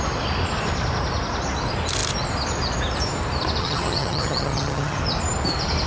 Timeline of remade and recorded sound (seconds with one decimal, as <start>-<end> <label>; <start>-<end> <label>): 0.0-3.6 recorded; 3.6-5.0 remade; 5.0-5.9 recorded

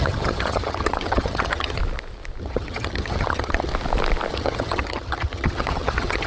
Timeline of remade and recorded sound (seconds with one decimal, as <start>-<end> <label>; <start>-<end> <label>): 0.0-1.8 remade; 1.8-2.4 recorded; 2.4-3.7 remade; 3.7-4.3 recorded; 4.3-6.3 remade

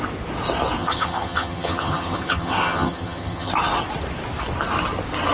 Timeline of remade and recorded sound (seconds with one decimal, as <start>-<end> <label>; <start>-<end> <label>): 0.0-0.8 recorded; 0.8-3.5 remade; 3.5-5.3 recorded

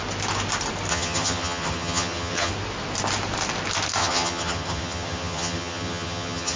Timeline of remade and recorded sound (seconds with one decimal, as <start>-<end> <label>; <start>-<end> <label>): 0.0-0.9 recorded; 0.9-2.5 remade; 2.5-4.0 recorded; 4.0-6.6 remade